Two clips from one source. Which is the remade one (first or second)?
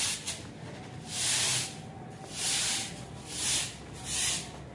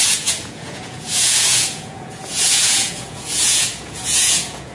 second